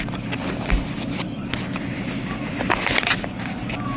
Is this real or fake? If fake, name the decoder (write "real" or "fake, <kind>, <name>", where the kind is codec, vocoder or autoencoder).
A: real